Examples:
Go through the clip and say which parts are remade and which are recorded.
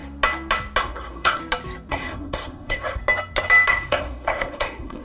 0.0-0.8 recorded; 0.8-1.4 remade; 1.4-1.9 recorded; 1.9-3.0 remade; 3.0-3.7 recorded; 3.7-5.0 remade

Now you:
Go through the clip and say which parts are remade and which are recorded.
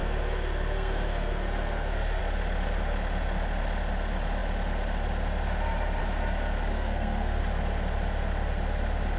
0.0-2.2 remade; 2.2-6.7 recorded; 6.7-7.4 remade; 7.4-9.2 recorded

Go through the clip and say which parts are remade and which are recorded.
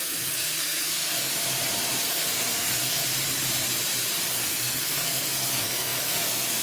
0.0-1.3 remade; 1.3-2.1 recorded; 2.1-3.0 remade; 3.0-4.3 recorded; 4.3-6.6 remade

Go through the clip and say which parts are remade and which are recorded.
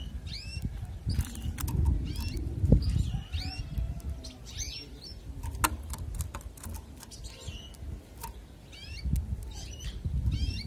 0.0-10.7 recorded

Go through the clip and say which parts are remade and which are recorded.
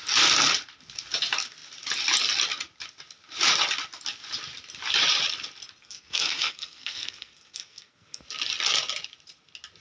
0.0-5.8 recorded; 5.8-8.2 remade; 8.2-9.8 recorded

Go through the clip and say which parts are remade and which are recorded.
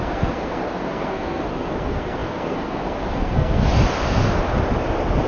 0.0-3.6 remade; 3.6-5.3 recorded